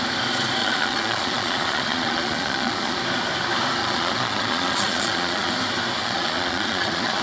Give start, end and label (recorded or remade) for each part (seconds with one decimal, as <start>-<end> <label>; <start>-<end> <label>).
0.0-0.6 recorded; 0.6-3.0 remade; 3.0-3.8 recorded; 3.8-5.5 remade; 5.5-6.0 recorded; 6.0-7.2 remade